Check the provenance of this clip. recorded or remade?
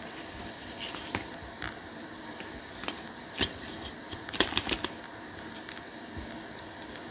recorded